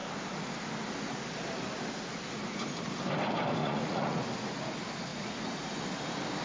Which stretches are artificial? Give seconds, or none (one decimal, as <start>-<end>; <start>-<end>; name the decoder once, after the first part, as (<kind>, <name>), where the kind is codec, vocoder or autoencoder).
3.6-4.2 (vocoder, Vocos); 5.1-5.7